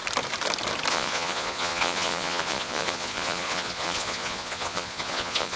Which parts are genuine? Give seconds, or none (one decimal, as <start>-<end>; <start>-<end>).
0.0-0.9